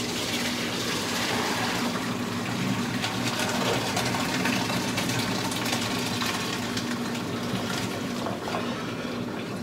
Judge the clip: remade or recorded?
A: recorded